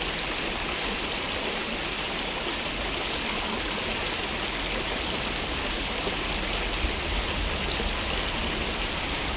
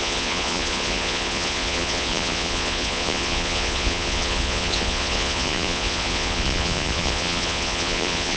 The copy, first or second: second